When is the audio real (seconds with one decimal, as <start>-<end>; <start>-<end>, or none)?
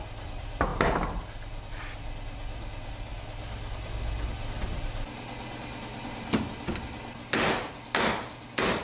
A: 0.0-8.8